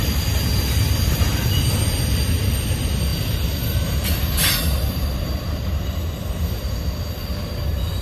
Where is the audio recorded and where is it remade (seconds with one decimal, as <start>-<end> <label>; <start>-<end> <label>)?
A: 0.0-8.0 recorded